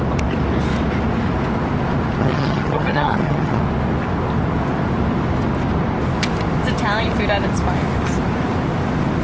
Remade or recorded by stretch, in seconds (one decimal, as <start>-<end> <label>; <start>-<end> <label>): 0.0-2.2 recorded; 2.2-3.6 remade; 3.6-9.2 recorded